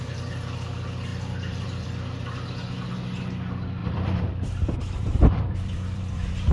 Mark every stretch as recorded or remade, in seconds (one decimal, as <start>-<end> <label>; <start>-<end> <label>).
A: 0.0-1.1 recorded; 1.1-2.0 remade; 2.0-3.8 recorded; 3.8-6.5 remade